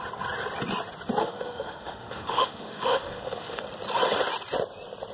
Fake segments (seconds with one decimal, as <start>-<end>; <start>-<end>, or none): 1.2-3.6